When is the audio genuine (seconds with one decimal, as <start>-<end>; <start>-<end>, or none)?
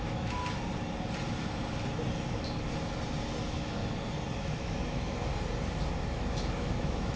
0.4-3.4; 3.8-4.4; 5.3-6.0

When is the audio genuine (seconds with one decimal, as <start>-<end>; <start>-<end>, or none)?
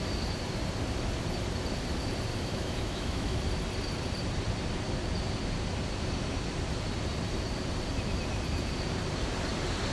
0.0-2.3; 3.4-9.9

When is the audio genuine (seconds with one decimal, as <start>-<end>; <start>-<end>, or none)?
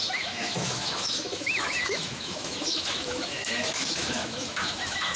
none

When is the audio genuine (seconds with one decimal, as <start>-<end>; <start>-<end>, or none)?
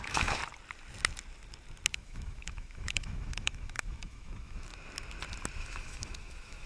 0.4-1.9; 4.7-5.6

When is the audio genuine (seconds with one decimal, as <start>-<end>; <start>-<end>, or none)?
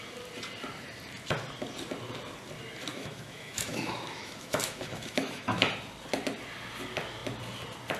0.0-2.9; 5.7-8.0